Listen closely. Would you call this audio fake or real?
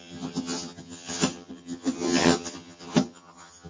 fake